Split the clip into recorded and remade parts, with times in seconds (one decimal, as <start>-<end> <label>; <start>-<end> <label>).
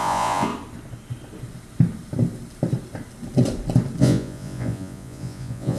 0.0-0.5 remade; 0.5-4.0 recorded; 4.0-5.8 remade